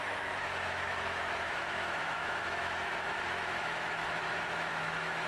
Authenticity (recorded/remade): remade